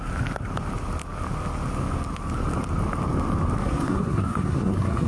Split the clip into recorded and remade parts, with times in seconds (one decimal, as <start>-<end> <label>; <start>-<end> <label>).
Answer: 0.0-3.6 recorded; 3.6-5.1 remade